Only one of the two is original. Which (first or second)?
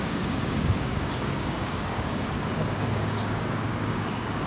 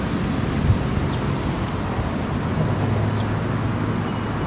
second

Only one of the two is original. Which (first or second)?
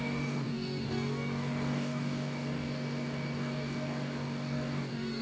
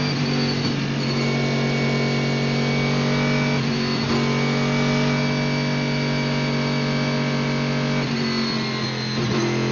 second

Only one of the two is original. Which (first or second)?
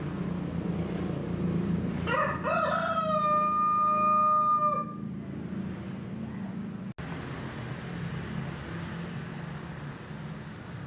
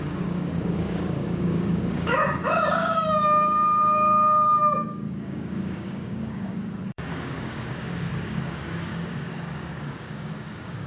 first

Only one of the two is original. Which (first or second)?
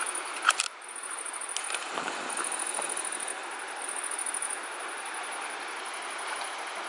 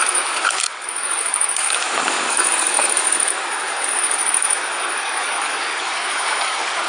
first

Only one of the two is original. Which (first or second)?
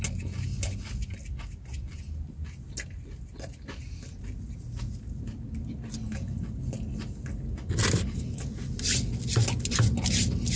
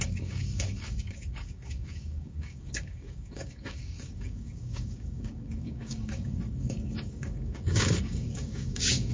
first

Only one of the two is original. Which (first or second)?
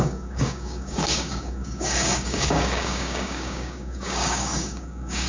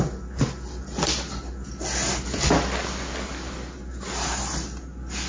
second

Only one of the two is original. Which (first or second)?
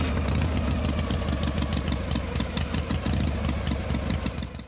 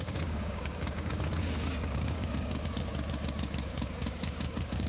first